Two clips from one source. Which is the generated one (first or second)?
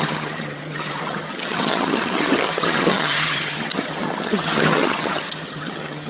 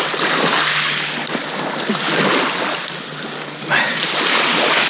first